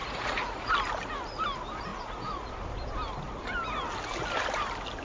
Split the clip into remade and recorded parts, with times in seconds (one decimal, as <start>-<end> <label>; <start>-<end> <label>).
0.0-0.7 remade; 0.7-1.9 recorded; 1.9-2.5 remade; 2.5-5.0 recorded